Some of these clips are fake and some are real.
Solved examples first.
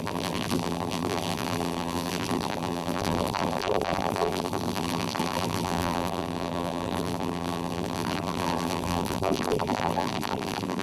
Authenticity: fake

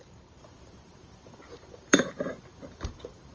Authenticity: fake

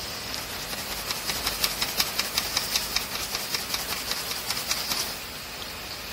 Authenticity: real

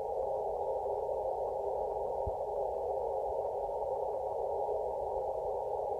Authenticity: real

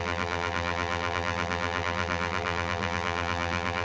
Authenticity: fake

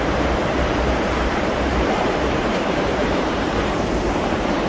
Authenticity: fake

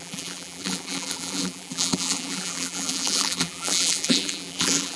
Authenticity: fake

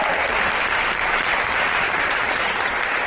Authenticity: fake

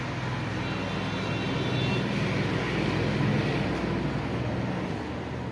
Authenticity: real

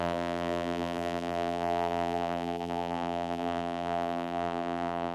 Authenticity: fake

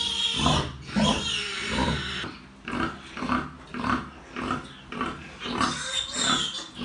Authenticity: real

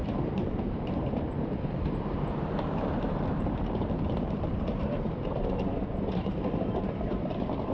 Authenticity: fake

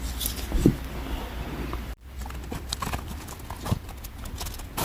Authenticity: real